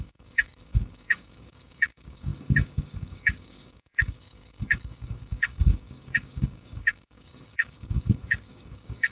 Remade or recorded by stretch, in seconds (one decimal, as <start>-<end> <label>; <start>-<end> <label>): 0.0-9.1 remade